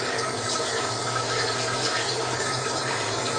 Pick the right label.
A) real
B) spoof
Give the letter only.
B